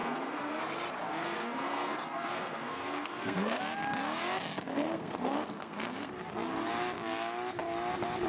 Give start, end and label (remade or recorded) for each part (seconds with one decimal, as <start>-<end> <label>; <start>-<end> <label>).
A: 0.0-0.6 remade; 0.6-1.1 recorded; 1.1-3.6 remade; 3.6-4.7 recorded; 4.7-6.1 remade; 6.1-8.3 recorded